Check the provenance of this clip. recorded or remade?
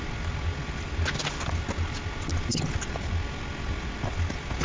recorded